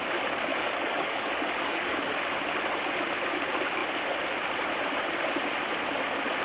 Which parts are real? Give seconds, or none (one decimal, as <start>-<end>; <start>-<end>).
0.0-0.5; 2.2-6.4